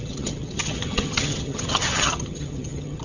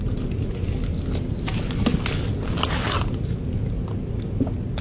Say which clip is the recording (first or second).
second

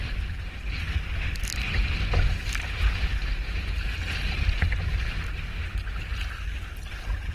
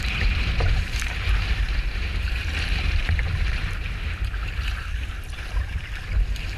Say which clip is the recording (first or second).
first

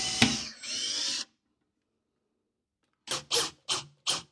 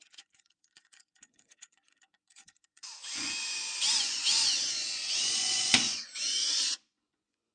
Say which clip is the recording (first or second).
first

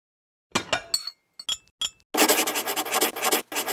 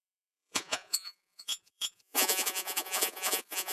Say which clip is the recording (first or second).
first